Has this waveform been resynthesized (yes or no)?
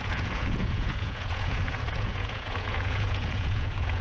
yes